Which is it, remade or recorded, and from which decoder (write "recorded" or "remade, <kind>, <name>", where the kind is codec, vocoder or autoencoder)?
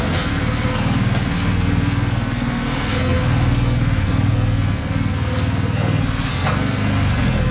remade, codec, SNAC